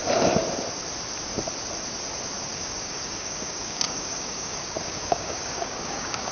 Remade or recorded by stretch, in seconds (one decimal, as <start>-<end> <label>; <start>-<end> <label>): 0.0-2.5 recorded; 2.5-6.3 remade